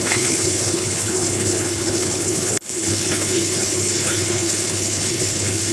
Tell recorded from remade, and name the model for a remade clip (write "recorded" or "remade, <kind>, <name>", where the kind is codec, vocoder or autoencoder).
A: remade, codec, HILCodec